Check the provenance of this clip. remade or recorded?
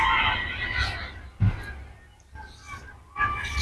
recorded